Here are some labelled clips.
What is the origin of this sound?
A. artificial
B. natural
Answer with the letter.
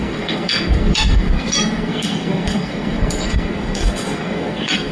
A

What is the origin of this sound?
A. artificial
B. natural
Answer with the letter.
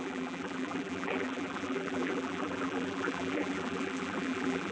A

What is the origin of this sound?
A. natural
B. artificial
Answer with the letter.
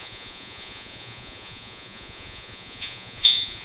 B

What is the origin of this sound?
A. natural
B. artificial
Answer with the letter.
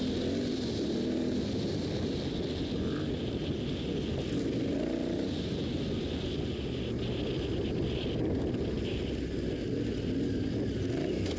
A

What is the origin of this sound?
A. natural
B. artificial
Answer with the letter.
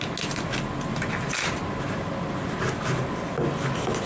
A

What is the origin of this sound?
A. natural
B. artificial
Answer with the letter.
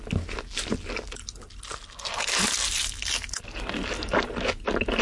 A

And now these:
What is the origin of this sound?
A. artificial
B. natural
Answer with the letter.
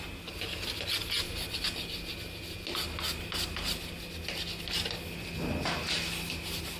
B